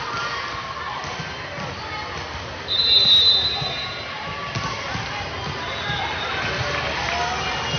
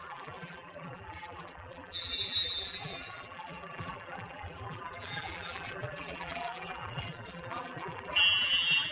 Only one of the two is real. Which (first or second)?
first